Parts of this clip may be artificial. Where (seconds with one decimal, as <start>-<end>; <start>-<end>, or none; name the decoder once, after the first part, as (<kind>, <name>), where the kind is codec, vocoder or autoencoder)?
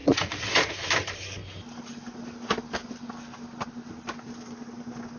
0.0-0.7 (vocoder, Vocos)